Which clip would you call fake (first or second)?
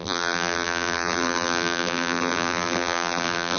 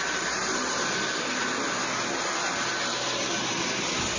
first